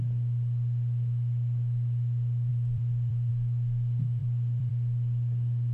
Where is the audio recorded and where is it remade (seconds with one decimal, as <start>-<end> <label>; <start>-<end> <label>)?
0.0-2.5 recorded; 2.5-3.3 remade; 3.3-4.2 recorded; 4.2-4.7 remade; 4.7-5.7 recorded